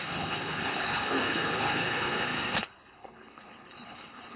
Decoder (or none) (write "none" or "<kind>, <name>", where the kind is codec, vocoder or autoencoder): codec, HILCodec